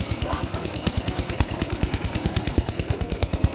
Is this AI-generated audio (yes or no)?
yes